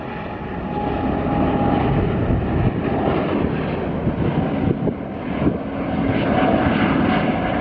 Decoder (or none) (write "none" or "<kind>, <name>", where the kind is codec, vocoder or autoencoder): none